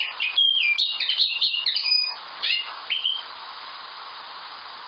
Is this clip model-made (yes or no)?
no